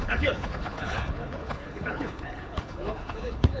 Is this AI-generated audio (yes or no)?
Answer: yes